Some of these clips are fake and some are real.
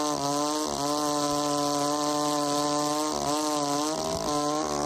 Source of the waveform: real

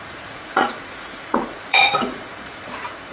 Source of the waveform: fake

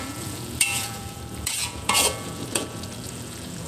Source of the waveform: fake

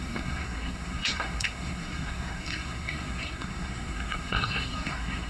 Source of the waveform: fake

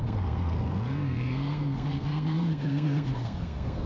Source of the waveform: fake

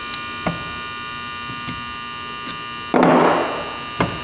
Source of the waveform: real